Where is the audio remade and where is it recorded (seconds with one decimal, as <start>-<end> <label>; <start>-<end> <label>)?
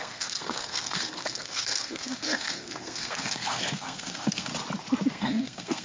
0.0-4.5 remade; 4.5-5.1 recorded; 5.1-5.8 remade